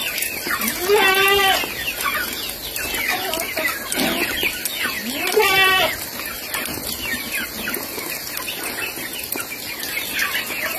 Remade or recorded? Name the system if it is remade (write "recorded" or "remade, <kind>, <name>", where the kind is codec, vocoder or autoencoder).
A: recorded